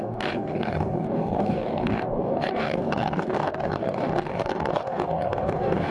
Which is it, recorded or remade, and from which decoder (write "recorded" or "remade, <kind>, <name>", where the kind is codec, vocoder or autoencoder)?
remade, codec, DAC